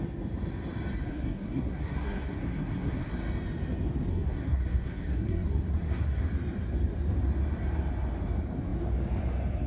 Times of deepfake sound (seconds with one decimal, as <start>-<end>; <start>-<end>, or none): 1.1-3.1; 4.1-6.2